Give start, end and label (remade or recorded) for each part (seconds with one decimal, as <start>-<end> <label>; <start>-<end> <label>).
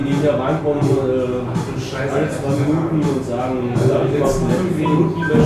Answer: 0.0-5.5 recorded